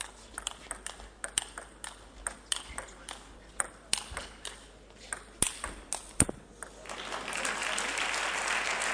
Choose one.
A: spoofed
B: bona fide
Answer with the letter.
B